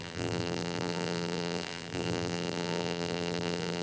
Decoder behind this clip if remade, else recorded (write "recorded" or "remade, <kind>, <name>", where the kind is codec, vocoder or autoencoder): remade, vocoder, BigVGAN v2